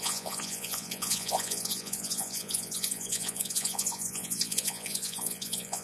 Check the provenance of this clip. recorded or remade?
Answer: remade